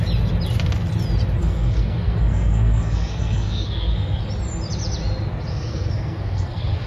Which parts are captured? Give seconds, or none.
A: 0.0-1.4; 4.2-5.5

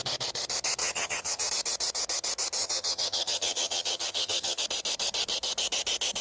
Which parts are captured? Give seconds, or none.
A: 0.0-0.8; 1.5-2.6; 4.6-6.2

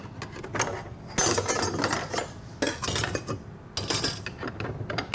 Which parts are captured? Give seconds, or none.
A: 0.0-5.1

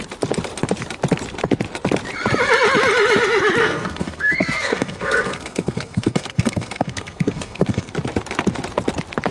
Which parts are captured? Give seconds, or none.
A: 0.0-3.6; 7.9-9.3

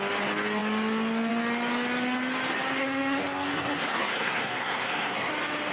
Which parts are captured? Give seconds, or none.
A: 0.0-2.8; 5.3-5.7

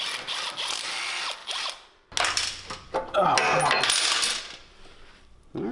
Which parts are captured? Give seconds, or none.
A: 0.0-5.7

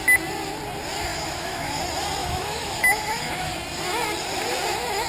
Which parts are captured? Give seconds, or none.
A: 0.0-1.1; 1.8-2.2; 3.5-5.1

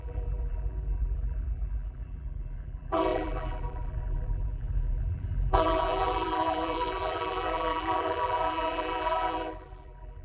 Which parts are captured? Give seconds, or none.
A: none